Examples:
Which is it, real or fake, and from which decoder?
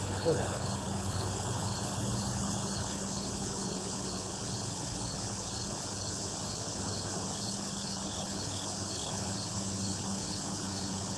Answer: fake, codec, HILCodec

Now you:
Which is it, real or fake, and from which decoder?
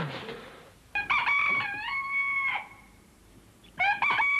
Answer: fake, vocoder, BigVGAN v2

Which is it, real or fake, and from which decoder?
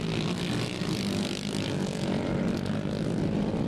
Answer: real